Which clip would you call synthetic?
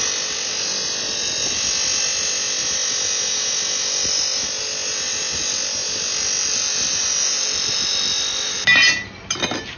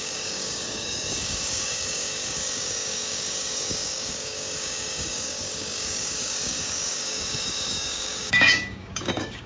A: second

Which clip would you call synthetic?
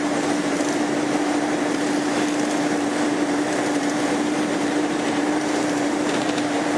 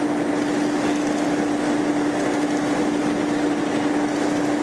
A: first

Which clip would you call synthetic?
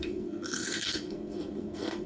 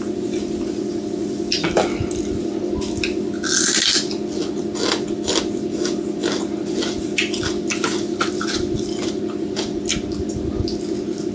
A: first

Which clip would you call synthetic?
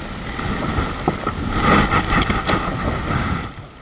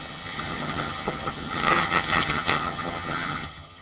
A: second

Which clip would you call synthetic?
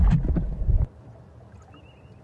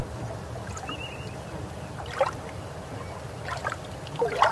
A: second